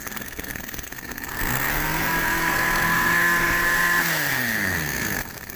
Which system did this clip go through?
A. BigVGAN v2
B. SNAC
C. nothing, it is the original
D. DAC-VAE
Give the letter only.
B